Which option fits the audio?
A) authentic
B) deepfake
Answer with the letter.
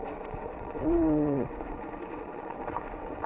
B